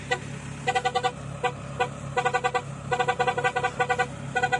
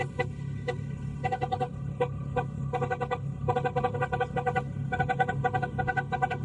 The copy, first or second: second